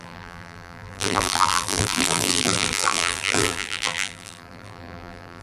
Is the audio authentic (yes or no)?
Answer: no